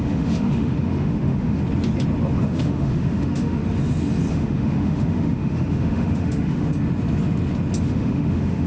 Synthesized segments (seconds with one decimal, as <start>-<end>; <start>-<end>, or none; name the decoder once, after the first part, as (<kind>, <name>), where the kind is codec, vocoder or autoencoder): 0.0-1.6 (autoencoder, DAC-VAE); 2.4-3.6; 4.3-6.7; 7.8-8.7